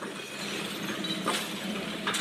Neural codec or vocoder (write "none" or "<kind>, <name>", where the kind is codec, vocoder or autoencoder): none